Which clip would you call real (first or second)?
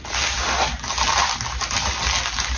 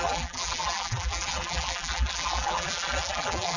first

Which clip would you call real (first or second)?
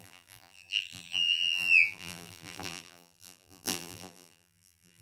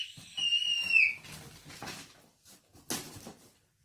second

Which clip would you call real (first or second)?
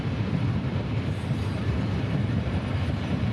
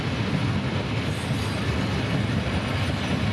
second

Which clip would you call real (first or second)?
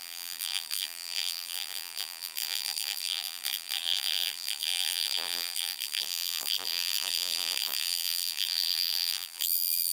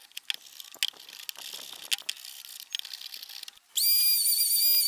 second